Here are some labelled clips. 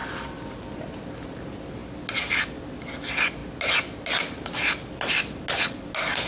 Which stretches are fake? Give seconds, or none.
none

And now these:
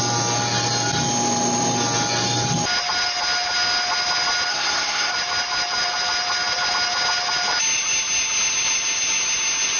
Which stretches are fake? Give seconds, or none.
4.5-5.1

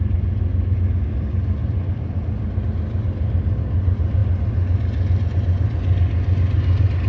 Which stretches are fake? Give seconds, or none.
none